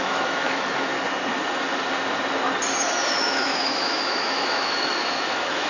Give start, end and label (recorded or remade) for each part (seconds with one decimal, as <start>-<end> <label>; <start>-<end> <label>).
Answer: 0.0-0.9 remade; 0.9-3.1 recorded; 3.1-5.7 remade